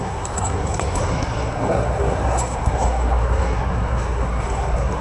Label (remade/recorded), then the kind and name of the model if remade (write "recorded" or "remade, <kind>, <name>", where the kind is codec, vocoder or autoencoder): remade, codec, SNAC